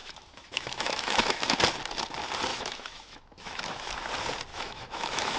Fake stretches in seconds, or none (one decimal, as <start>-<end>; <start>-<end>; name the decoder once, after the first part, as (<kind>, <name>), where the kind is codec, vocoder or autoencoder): 0.0-1.6 (autoencoder, DAC-VAE); 2.5-3.9; 4.5-5.4